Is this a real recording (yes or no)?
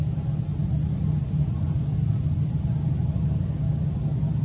yes